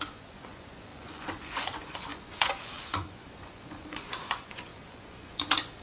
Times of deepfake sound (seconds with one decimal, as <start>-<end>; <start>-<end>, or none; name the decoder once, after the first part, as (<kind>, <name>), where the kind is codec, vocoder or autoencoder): 0.0-5.8 (vocoder, Vocos)